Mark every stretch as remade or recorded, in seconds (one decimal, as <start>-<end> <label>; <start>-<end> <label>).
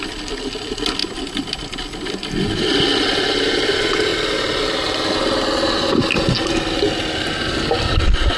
0.0-1.0 recorded; 1.0-2.6 remade; 2.6-8.4 recorded